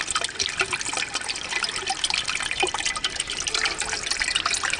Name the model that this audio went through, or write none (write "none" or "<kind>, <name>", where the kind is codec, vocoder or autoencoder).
none